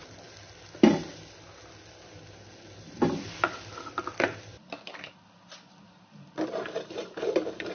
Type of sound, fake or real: real